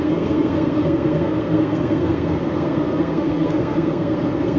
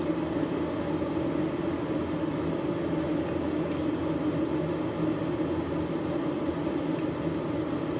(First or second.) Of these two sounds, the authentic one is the second